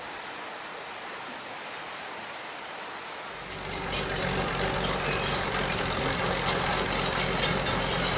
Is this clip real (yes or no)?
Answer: yes